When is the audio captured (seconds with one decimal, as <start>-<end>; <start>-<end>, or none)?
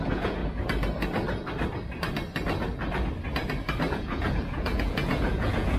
0.4-3.9